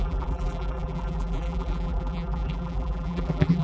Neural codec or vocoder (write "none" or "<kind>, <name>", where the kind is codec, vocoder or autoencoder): vocoder, BigVGAN v2